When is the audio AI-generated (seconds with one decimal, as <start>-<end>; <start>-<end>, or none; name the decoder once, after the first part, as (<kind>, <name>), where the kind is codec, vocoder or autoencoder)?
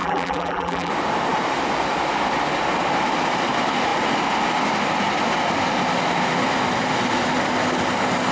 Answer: 0.0-0.9 (vocoder, BigVGAN v2)